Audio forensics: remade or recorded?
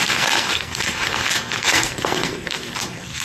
remade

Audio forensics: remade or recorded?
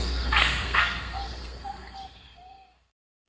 remade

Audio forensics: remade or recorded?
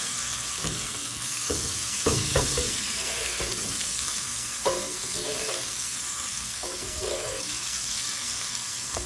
remade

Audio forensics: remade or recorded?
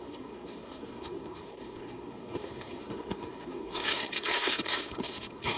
remade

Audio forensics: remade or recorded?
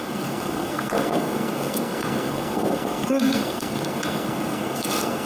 remade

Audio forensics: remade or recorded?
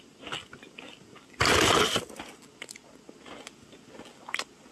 recorded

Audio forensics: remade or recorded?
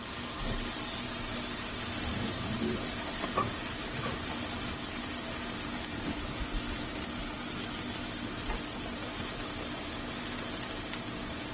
recorded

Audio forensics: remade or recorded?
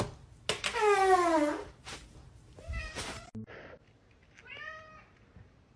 recorded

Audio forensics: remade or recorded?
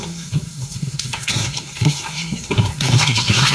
remade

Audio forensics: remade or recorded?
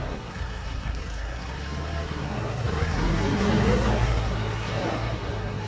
remade